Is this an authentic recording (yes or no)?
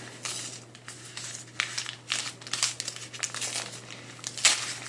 yes